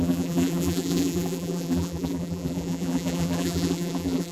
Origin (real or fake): fake